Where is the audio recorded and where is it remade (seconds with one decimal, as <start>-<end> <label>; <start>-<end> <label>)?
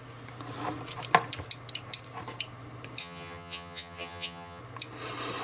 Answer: 0.0-3.0 recorded; 3.0-4.6 remade; 4.6-5.4 recorded